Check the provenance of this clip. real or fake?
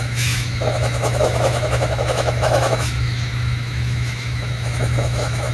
fake